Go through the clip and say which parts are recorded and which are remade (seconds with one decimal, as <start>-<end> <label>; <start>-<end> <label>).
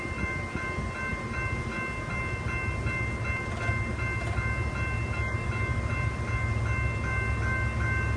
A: 0.0-8.2 recorded